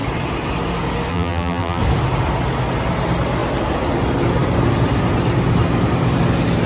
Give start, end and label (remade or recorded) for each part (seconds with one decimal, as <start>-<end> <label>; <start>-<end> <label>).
0.0-1.1 recorded; 1.1-1.8 remade; 1.8-6.7 recorded